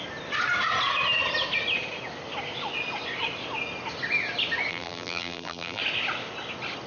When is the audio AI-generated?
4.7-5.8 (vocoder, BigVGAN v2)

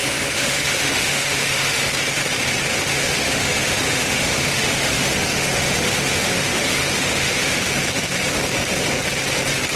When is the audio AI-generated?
0.0-1.8 (autoencoder, DAC-VAE); 2.9-7.7